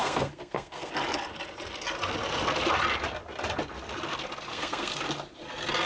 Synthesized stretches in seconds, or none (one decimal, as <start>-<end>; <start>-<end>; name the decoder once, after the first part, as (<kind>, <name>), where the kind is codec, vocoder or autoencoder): 0.0-0.9 (codec, SNAC); 4.5-5.0